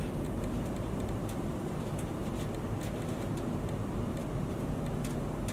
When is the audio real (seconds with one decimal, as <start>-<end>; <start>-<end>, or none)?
2.2-5.5